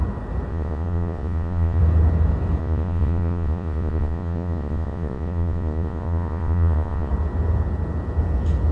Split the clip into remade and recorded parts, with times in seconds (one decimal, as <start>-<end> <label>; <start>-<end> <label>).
0.0-0.5 recorded; 0.5-1.8 remade; 1.8-2.6 recorded; 2.6-7.1 remade; 7.1-8.7 recorded